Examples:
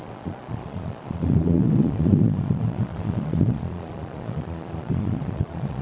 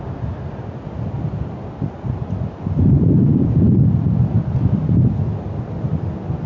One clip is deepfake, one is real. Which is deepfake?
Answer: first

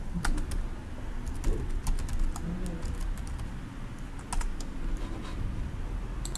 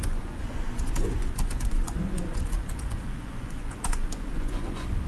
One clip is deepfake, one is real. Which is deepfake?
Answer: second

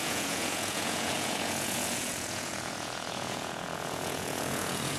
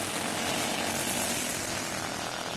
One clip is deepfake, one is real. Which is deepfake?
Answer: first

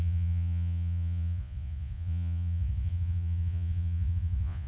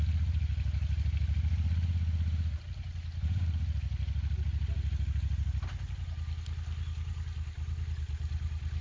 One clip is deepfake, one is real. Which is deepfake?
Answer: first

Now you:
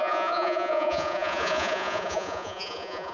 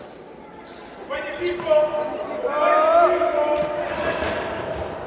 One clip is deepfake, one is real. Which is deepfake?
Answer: first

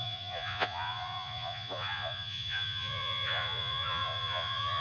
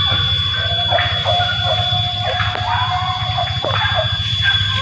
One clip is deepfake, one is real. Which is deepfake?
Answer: first